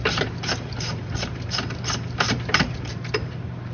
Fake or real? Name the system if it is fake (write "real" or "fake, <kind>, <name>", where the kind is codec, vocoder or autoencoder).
fake, vocoder, BigVGAN v2